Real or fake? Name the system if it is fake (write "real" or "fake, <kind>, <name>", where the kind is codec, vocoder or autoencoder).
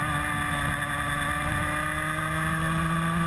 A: real